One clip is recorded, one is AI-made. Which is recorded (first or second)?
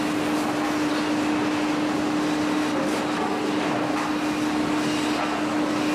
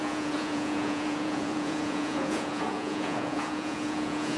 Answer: first